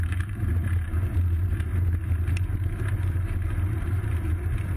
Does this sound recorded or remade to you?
remade